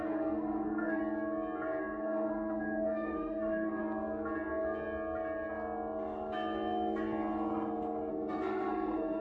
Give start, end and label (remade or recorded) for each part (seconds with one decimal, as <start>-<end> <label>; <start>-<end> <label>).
0.0-1.0 remade; 1.0-1.8 recorded; 1.8-3.8 remade; 3.8-8.1 recorded; 8.1-9.2 remade